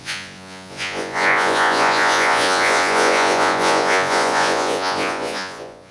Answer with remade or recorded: remade